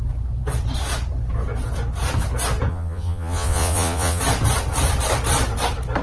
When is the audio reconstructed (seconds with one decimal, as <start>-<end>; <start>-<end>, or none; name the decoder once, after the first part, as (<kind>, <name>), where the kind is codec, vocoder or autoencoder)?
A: 2.7-4.2 (vocoder, Vocos)